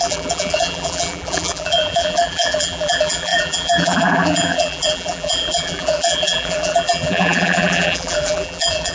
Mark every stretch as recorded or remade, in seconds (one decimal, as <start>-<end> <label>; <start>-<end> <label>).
0.0-8.9 remade